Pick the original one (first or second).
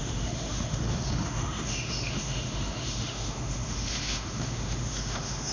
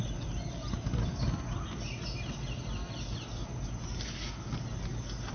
second